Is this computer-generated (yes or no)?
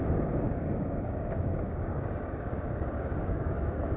yes